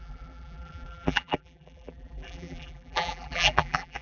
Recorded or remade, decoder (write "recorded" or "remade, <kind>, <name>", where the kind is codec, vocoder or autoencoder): remade, vocoder, BigVGAN v2